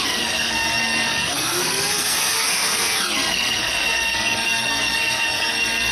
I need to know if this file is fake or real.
fake